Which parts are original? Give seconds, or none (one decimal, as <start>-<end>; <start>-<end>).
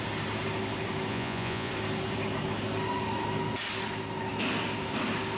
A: 0.0-1.1; 1.7-5.4